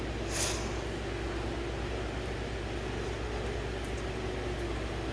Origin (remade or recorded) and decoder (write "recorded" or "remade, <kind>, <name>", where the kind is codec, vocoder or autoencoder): recorded